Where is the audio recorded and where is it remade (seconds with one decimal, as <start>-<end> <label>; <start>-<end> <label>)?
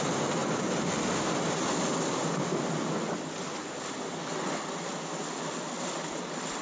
0.0-6.6 recorded